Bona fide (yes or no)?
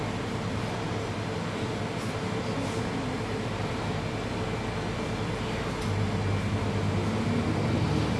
yes